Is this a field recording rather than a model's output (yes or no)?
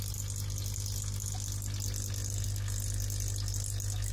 yes